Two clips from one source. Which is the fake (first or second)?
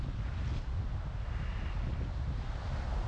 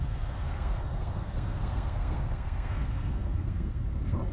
second